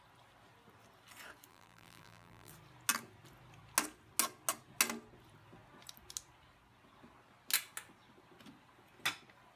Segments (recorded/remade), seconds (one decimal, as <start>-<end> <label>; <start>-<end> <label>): 0.0-1.5 recorded; 1.5-2.5 remade; 2.5-9.6 recorded